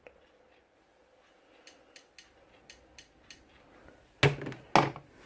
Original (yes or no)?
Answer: yes